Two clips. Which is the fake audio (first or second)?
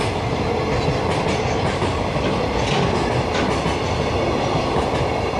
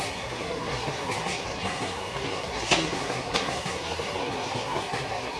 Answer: second